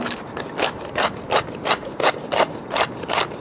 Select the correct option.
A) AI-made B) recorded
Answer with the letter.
B